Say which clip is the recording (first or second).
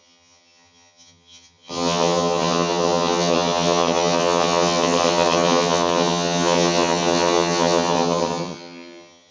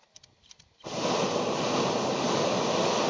second